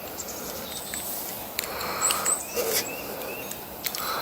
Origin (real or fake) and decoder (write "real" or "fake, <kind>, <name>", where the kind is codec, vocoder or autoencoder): real